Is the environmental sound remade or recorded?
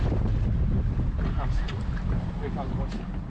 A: recorded